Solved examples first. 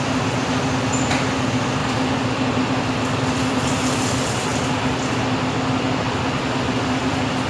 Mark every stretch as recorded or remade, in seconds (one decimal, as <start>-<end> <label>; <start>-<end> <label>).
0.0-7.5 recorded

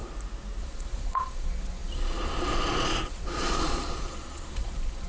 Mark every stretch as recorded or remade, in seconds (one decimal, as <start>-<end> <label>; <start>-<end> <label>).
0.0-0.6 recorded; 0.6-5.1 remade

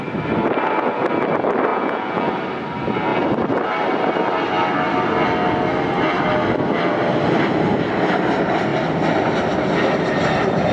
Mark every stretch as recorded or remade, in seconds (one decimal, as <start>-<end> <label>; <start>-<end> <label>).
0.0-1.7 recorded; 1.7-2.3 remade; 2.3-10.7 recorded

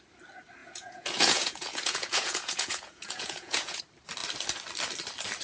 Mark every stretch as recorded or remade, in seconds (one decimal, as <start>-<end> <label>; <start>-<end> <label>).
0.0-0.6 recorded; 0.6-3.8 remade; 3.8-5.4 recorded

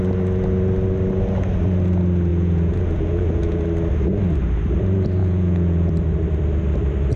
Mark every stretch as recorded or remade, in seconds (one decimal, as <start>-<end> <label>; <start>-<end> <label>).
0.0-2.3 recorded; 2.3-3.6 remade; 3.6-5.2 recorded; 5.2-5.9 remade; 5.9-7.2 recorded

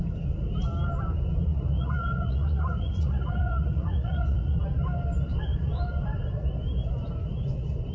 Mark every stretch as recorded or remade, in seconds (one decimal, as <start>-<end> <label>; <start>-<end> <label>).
0.0-1.5 recorded; 1.5-4.6 remade; 4.6-7.9 recorded

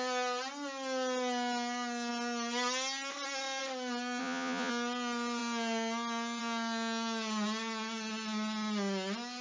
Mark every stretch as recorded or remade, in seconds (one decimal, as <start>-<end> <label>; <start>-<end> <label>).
0.0-4.2 recorded; 4.2-4.7 remade; 4.7-9.4 recorded